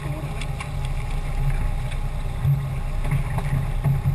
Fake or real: real